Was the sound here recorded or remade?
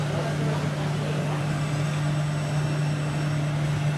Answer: recorded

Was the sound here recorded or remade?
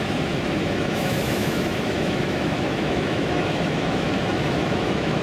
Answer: remade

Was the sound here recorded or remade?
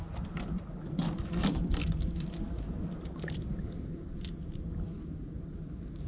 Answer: recorded